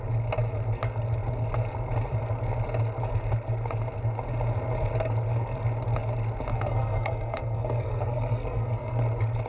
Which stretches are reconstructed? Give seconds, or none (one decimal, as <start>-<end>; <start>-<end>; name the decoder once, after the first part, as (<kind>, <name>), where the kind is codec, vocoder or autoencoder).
6.5-9.0 (codec, SNAC)

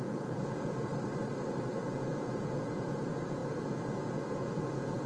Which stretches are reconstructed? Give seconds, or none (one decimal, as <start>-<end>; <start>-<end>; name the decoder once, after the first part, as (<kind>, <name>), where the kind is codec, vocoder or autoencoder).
0.0-0.9 (vocoder, Vocos); 1.7-5.1

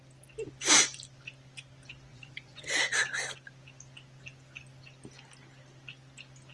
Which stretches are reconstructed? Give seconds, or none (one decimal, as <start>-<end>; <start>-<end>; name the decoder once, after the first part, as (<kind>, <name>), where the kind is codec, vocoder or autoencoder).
2.1-2.7 (vocoder, Vocos)

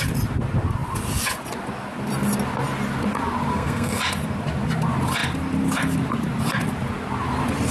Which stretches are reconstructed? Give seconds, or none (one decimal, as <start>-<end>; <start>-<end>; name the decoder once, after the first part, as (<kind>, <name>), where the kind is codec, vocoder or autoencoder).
3.5-4.0 (codec, SNAC)

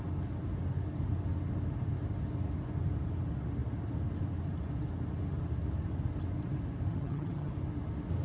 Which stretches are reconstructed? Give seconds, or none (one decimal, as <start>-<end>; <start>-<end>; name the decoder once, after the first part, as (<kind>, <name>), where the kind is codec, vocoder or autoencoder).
6.9-7.5 (vocoder, HiFi-GAN)